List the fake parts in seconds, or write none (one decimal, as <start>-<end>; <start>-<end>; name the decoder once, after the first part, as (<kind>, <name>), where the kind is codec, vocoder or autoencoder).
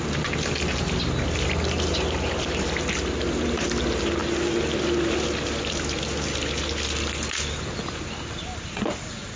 none